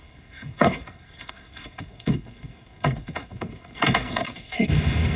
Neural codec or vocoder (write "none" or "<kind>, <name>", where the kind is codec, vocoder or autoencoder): codec, SNAC